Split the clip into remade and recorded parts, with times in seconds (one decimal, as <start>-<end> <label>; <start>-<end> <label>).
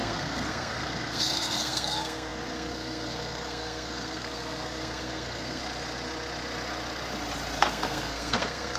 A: 0.0-5.6 remade; 5.6-7.6 recorded; 7.6-8.8 remade